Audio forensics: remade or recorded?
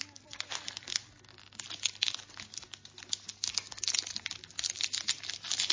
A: recorded